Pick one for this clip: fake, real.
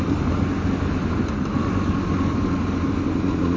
real